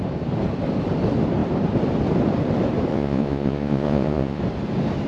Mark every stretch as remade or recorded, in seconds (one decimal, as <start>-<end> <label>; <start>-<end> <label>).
0.0-2.9 recorded; 2.9-4.4 remade; 4.4-5.1 recorded